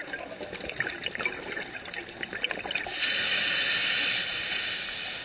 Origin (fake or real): real